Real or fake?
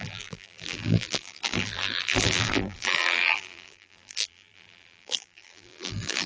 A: fake